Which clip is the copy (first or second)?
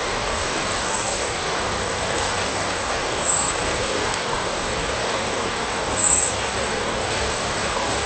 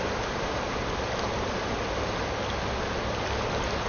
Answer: first